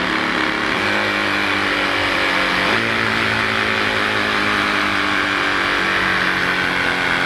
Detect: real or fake real